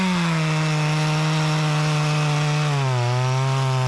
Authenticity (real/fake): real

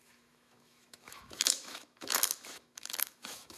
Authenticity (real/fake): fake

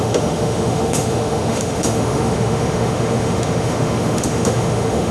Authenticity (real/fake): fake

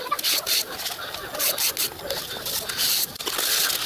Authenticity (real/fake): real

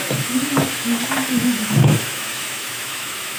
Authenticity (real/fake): fake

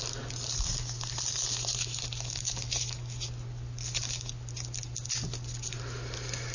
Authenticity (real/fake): real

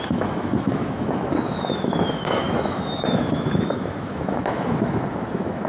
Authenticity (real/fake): fake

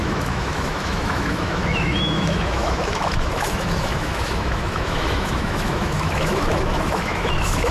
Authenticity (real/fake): fake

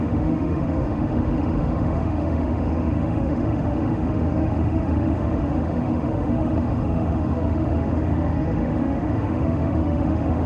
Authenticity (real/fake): fake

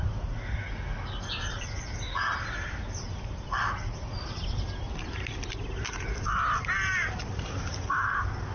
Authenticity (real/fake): real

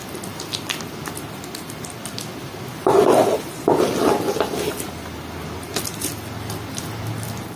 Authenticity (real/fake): real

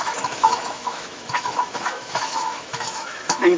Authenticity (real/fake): fake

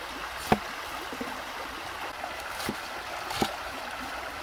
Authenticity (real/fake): real